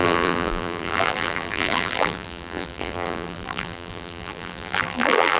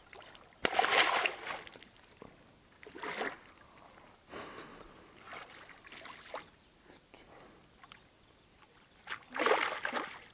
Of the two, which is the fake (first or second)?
first